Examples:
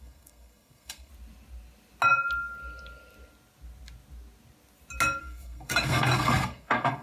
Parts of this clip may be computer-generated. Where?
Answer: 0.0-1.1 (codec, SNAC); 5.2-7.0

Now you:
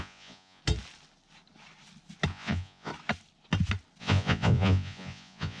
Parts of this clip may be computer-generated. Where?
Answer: 0.0-0.6 (vocoder, Vocos); 2.3-2.9; 4.0-5.6

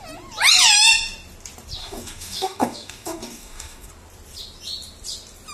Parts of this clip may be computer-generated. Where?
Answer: 1.8-3.9 (codec, DAC)

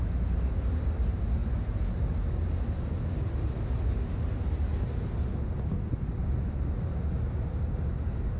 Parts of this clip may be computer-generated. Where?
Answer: none

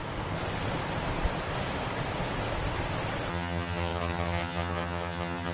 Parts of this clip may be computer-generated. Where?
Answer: 3.3-5.5 (vocoder, HiFi-GAN)